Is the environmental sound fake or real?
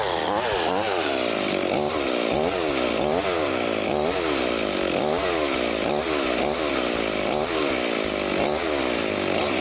real